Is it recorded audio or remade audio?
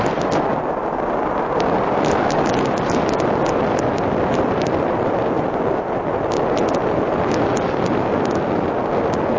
recorded